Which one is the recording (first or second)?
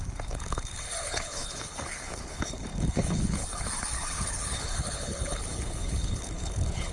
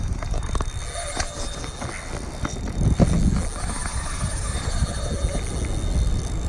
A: second